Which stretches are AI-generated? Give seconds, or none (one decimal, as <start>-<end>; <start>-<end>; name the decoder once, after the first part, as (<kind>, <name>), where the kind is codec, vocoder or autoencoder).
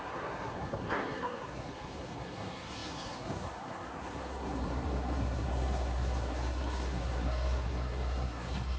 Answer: 0.0-8.8 (codec, SNAC)